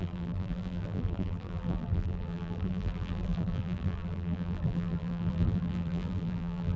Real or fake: fake